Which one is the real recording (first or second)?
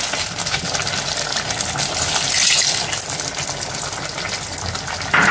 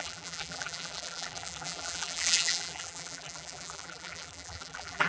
first